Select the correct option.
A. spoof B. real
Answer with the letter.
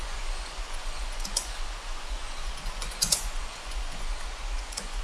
A